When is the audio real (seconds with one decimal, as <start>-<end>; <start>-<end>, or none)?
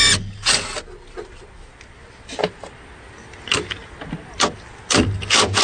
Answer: 0.0-5.6